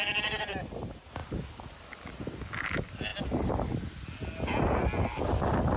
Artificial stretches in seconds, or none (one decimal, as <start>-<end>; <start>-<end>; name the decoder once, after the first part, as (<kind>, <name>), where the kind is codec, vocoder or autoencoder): none